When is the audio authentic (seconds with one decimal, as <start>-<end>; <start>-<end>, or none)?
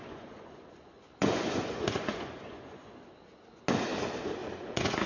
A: 3.1-4.4